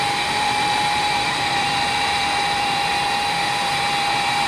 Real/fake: fake